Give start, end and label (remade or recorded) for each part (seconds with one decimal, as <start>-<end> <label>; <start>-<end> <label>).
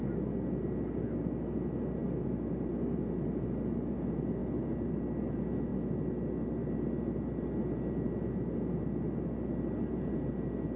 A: 0.0-10.8 recorded